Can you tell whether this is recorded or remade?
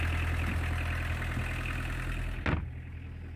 recorded